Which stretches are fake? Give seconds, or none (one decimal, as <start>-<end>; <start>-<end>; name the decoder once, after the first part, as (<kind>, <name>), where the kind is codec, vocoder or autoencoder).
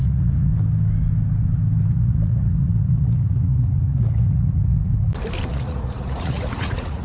0.0-0.5 (vocoder, Vocos); 1.9-4.9; 5.5-7.0